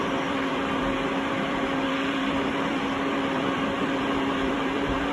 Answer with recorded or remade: remade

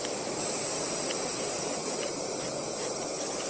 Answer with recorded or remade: remade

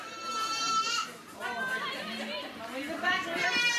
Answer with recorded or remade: remade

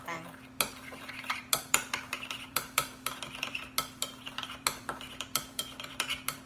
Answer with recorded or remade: remade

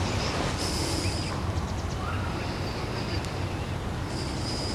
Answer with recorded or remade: recorded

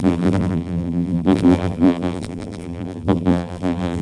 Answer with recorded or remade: remade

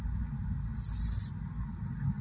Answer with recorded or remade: recorded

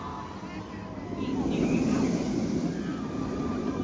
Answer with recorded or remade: recorded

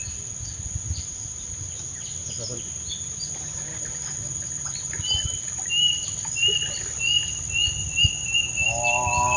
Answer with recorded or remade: recorded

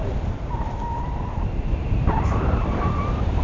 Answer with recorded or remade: recorded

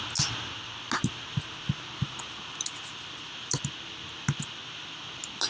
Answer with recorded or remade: recorded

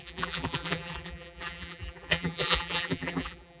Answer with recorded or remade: remade